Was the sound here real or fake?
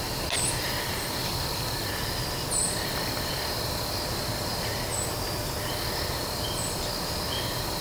real